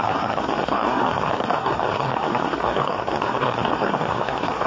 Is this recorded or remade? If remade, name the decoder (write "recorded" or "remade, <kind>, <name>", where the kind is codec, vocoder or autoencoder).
remade, codec, SNAC